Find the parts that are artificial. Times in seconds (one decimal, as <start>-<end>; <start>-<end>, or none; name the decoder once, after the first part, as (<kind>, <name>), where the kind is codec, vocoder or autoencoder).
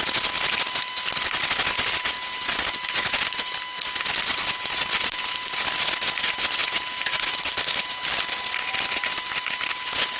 none